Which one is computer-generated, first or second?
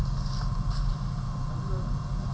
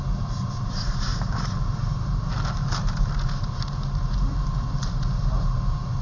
second